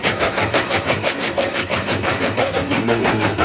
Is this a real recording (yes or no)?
no